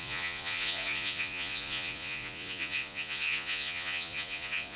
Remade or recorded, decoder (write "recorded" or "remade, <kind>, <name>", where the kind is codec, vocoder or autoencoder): remade, vocoder, Vocos